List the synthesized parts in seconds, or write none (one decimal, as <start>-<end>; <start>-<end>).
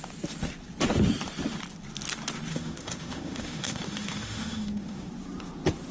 2.5-5.1